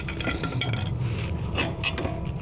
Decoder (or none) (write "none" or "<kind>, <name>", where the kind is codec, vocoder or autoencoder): none